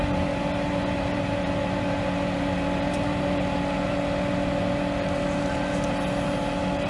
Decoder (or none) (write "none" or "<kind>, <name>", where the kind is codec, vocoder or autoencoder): none